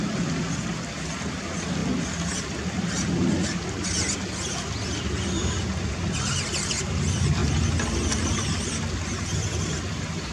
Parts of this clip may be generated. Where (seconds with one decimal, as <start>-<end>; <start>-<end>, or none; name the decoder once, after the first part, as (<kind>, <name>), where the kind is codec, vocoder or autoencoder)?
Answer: none